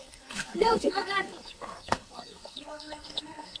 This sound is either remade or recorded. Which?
remade